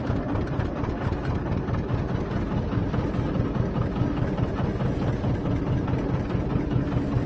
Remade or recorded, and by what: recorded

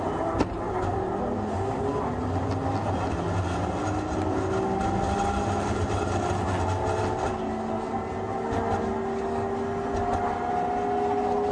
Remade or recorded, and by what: recorded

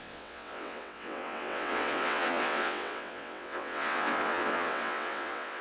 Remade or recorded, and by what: remade, vocoder, WaveNeXt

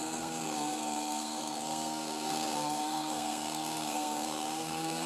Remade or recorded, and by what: remade, codec, SNAC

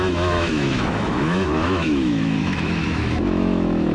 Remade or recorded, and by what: remade, autoencoder, DAC-VAE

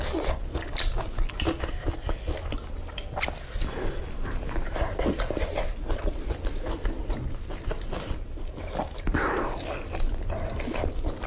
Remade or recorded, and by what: recorded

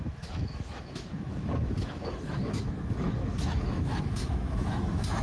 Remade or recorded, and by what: remade, autoencoder, DAC-VAE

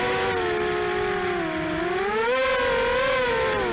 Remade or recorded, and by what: recorded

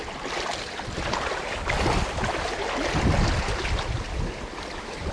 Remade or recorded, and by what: recorded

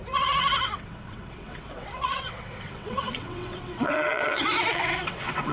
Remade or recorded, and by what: remade, vocoder, WaveNeXt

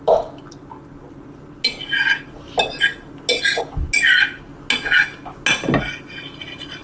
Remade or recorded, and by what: recorded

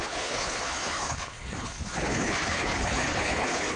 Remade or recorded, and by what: remade, codec, HILCodec